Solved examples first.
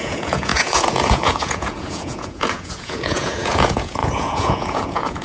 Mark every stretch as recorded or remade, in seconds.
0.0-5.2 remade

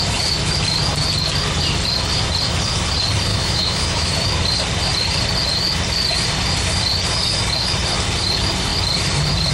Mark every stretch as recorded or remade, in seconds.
0.0-3.3 recorded; 3.3-4.1 remade; 4.1-9.5 recorded

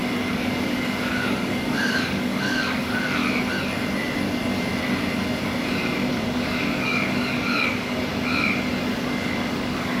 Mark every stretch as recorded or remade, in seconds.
0.0-3.2 remade; 3.2-6.1 recorded; 6.1-8.1 remade; 8.1-9.0 recorded; 9.0-10.0 remade

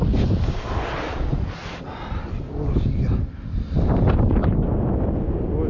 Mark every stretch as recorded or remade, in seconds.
0.0-5.7 recorded

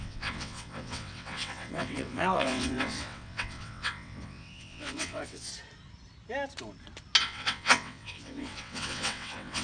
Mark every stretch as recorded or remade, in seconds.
0.0-5.5 remade; 5.5-7.2 recorded; 7.2-9.6 remade